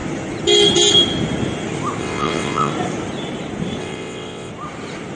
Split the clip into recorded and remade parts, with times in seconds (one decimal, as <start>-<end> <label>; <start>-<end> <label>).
0.0-2.0 recorded; 2.0-2.7 remade; 2.7-3.8 recorded; 3.8-4.5 remade; 4.5-5.2 recorded